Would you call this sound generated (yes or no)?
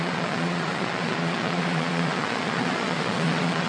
yes